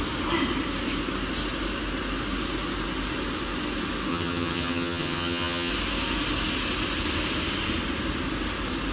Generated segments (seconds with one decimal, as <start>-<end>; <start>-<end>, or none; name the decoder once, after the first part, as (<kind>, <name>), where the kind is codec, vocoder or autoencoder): 4.1-5.7 (vocoder, HiFi-GAN)